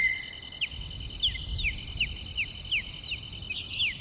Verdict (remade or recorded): recorded